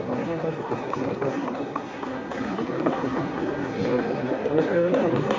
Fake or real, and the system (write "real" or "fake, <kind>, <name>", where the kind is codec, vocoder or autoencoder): fake, codec, SNAC